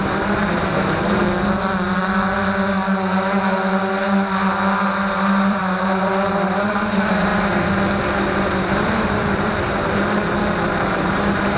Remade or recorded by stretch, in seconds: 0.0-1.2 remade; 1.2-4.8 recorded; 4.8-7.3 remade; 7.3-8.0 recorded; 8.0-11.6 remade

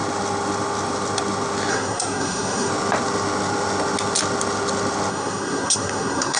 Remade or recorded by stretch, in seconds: 0.0-1.7 recorded; 1.7-2.7 remade; 2.7-5.1 recorded; 5.1-6.4 remade

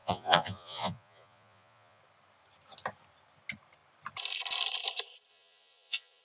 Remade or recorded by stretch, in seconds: 0.0-2.0 remade; 2.0-5.3 recorded; 5.3-6.2 remade

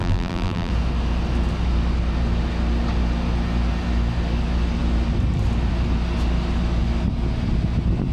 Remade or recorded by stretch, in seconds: 0.0-0.7 remade; 0.7-8.1 recorded

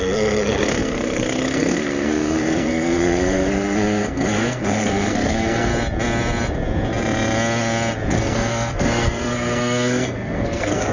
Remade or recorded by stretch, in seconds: 0.0-5.7 remade; 5.7-8.1 recorded; 8.1-10.9 remade